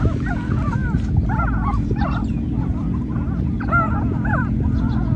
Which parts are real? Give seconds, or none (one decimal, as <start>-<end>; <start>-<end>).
0.0-0.8; 3.9-5.2